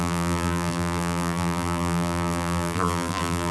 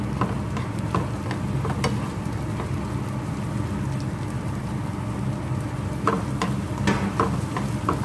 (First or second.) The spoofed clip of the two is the first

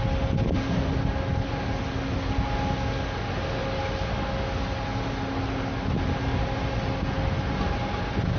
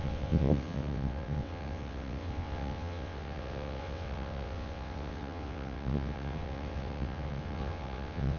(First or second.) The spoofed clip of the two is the second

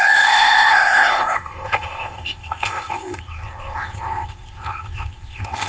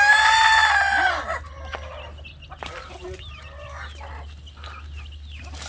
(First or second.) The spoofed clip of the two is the first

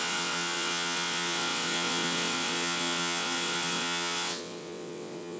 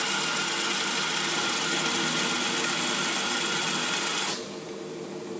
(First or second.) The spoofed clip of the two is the first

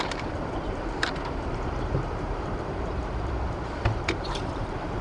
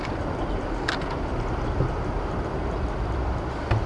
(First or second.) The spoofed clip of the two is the first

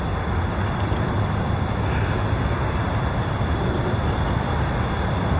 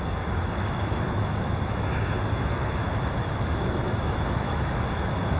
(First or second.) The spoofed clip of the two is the second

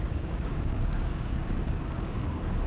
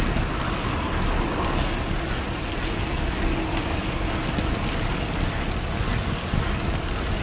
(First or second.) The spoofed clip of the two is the first